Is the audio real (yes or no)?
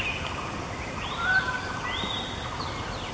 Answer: yes